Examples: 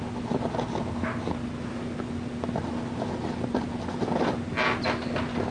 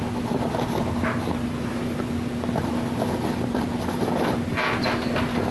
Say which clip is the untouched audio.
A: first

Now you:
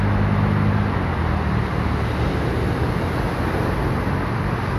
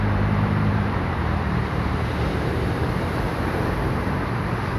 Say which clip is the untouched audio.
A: first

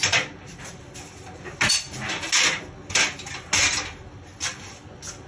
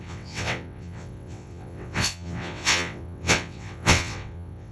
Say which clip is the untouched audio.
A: first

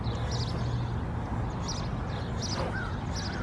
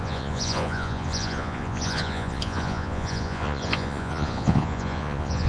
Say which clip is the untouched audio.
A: first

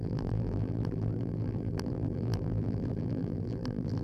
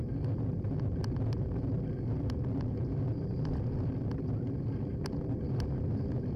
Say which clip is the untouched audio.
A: second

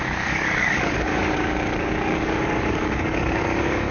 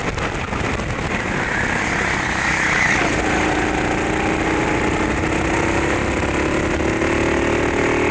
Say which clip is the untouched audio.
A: second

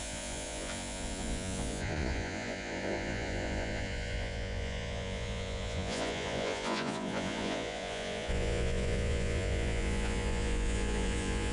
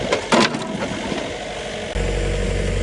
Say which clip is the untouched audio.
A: second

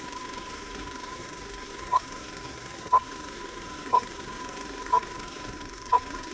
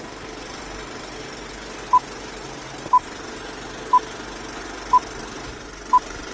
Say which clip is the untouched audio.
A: second